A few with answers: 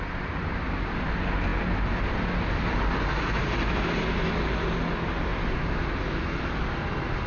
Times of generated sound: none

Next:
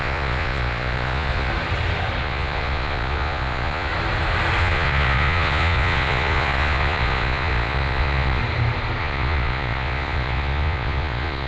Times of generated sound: 0.0-1.5 (vocoder, Vocos); 2.2-3.9; 4.6-8.4; 9.0-11.5

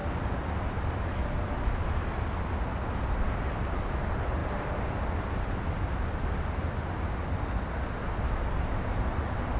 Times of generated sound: none

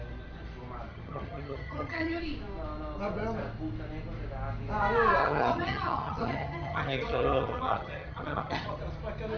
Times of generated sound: 0.9-2.2 (vocoder, HiFi-GAN); 5.2-8.8